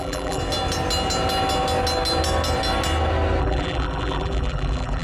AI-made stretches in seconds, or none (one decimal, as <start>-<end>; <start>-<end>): 0.0-0.4; 3.4-5.0